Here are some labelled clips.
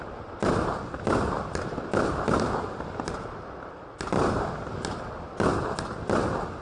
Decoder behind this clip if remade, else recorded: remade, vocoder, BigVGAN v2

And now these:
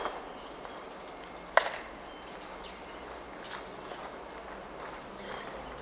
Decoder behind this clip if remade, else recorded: recorded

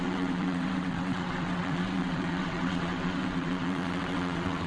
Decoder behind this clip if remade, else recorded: remade, vocoder, WaveNeXt